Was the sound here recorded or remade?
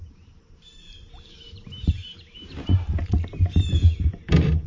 remade